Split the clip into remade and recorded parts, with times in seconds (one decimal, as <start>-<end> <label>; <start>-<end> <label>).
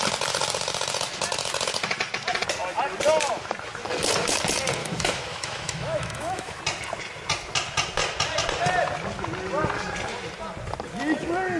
0.0-4.8 recorded; 4.8-6.6 remade; 6.6-11.6 recorded